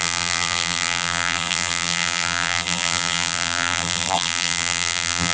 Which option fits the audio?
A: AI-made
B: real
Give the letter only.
A